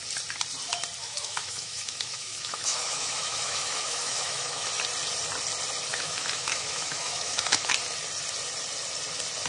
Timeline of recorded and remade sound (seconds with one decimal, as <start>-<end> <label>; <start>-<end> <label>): 0.0-1.0 recorded; 1.0-4.7 remade; 4.7-5.9 recorded; 5.9-7.7 remade; 7.7-9.5 recorded